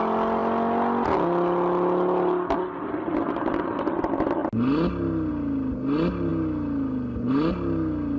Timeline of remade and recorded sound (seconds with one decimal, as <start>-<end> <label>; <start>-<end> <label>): 0.0-8.2 recorded